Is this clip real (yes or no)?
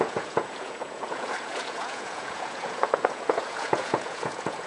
no